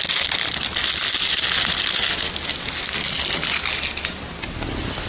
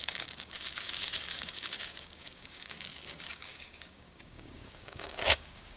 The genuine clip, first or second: first